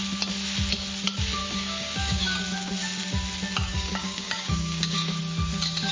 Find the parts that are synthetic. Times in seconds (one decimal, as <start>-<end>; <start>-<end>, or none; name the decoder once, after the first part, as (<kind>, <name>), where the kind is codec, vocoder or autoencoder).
1.4-2.4 (codec, DAC); 3.7-5.2